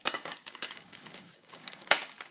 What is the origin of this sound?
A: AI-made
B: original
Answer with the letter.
A